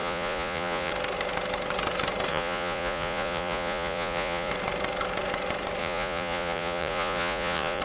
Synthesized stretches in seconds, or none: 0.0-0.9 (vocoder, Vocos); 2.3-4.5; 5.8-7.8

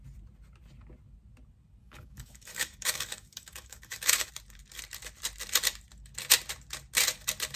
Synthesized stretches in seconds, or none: 1.8-4.3 (codec, DAC)

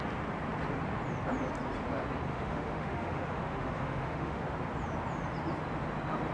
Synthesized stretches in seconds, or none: 2.3-4.4 (autoencoder, DAC-VAE)

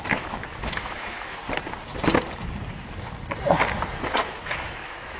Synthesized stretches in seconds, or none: 0.0-1.4 (autoencoder, DAC-VAE); 4.3-5.2

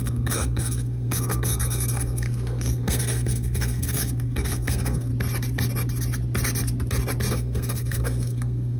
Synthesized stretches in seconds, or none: 0.0-5.1 (codec, SNAC); 7.3-8.8

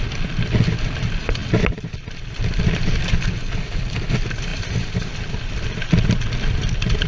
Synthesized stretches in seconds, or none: none

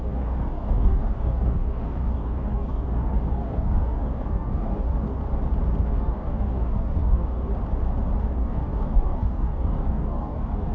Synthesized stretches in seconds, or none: 0.0-5.2 (codec, DAC); 5.8-7.5; 8.2-10.7